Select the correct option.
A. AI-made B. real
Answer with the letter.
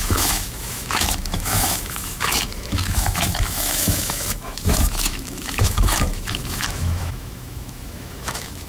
A